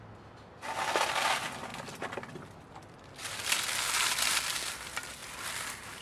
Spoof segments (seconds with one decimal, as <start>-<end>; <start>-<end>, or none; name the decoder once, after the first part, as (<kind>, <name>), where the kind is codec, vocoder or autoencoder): none